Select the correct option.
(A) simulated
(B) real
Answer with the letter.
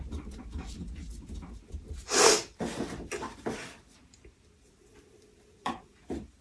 A